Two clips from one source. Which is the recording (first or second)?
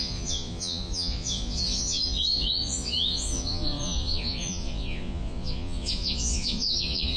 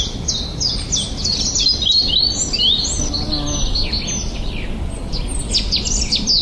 second